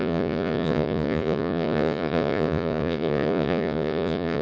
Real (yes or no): no